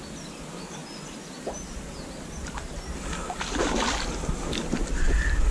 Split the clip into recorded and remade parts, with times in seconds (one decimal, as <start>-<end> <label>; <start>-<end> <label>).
0.0-5.5 recorded